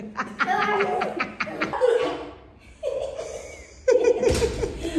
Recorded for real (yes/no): yes